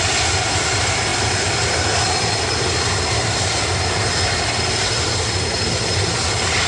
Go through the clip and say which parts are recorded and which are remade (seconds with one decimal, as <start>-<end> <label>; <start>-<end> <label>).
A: 0.0-6.7 recorded